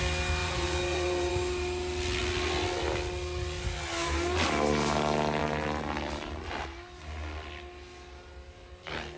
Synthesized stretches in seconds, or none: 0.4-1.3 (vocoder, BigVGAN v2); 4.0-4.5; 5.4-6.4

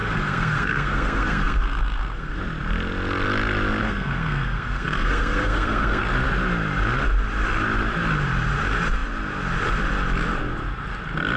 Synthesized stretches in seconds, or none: 0.0-2.4 (codec, SNAC); 3.8-6.0

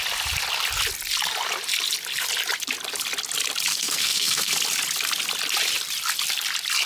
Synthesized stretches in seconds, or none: 3.7-4.5 (codec, SNAC)

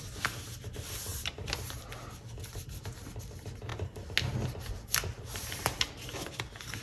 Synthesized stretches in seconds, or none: none

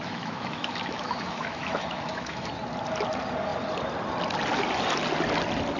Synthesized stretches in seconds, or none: 0.0-2.5 (autoencoder, DAC-VAE)

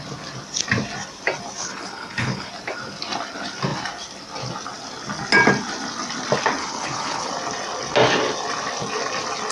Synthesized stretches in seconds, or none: 1.6-2.5 (codec, HILCodec); 6.6-7.3

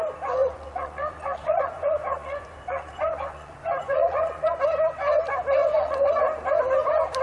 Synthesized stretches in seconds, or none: 0.4-4.5 (vocoder, Vocos); 5.6-6.2